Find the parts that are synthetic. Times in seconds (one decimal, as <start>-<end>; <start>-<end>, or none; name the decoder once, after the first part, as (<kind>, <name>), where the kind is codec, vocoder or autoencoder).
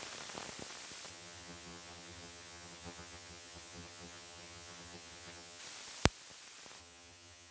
1.1-5.6 (vocoder, HiFi-GAN); 6.8-7.5